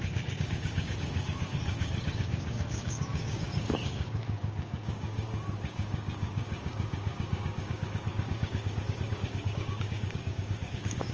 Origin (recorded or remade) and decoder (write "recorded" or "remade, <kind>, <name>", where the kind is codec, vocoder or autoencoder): remade, codec, DAC